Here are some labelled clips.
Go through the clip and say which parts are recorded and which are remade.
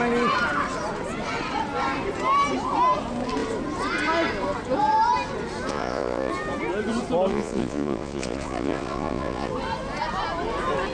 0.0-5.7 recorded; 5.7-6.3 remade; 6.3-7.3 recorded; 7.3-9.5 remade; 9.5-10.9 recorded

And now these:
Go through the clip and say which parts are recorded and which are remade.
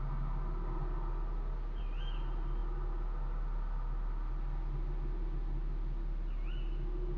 0.0-7.2 recorded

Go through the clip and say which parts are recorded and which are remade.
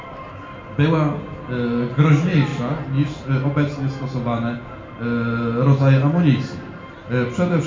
0.0-7.7 recorded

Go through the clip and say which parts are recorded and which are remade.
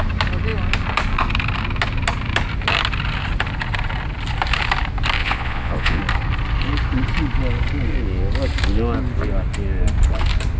0.0-5.2 recorded; 5.2-6.0 remade; 6.0-10.6 recorded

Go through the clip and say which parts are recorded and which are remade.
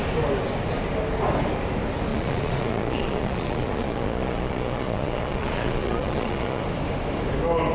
0.0-2.1 recorded; 2.1-6.6 remade; 6.6-7.7 recorded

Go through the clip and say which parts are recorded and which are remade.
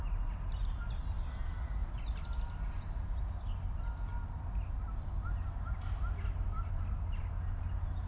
0.0-8.1 recorded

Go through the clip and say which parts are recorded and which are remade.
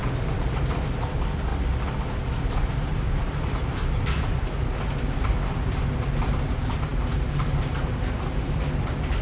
0.0-9.2 recorded